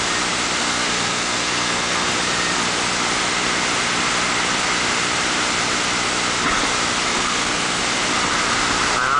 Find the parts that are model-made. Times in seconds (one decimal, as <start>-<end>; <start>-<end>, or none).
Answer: 0.6-2.1; 7.1-7.8